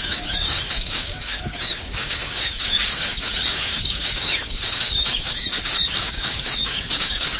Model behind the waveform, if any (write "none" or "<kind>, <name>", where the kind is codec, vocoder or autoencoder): codec, DAC